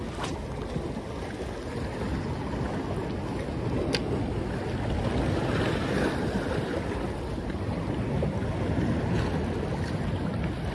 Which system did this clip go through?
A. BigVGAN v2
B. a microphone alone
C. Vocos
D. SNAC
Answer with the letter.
B